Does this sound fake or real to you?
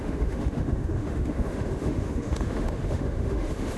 fake